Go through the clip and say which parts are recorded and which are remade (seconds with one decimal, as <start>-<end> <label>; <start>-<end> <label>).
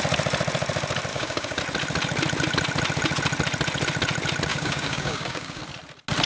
0.0-1.1 recorded; 1.1-1.6 remade; 1.6-4.5 recorded; 4.5-5.6 remade; 5.6-6.3 recorded